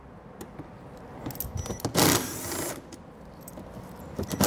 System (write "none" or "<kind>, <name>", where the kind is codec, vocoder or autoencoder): none